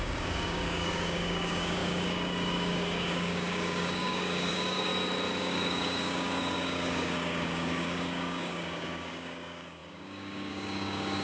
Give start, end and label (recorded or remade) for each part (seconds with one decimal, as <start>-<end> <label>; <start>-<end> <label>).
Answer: 0.0-4.9 remade; 4.9-5.4 recorded; 5.4-11.2 remade